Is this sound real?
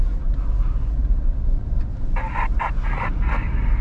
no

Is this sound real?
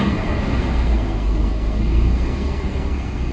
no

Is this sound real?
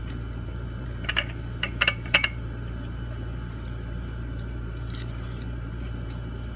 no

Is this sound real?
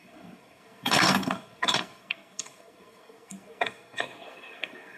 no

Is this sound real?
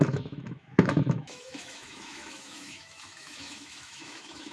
no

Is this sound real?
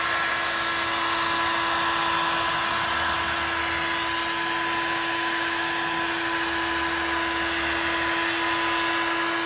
yes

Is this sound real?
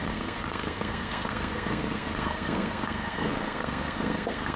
no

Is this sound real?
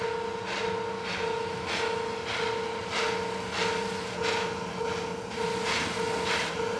yes